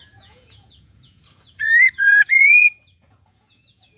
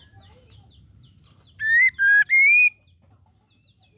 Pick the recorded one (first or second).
second